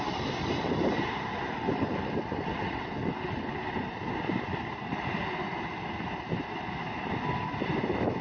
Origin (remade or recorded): recorded